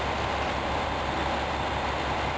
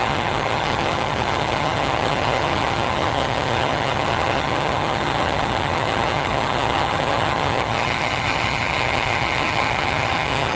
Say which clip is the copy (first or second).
second